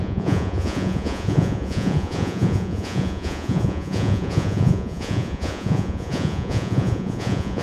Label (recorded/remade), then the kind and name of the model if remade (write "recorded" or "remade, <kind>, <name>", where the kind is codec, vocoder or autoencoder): remade, vocoder, Vocos